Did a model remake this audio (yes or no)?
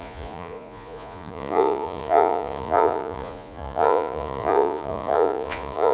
yes